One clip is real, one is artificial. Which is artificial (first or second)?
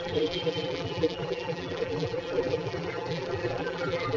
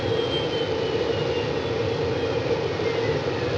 first